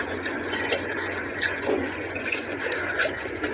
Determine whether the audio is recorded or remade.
remade